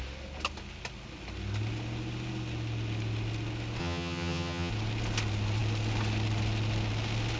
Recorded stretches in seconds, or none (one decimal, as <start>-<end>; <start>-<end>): 0.0-3.8; 4.7-7.4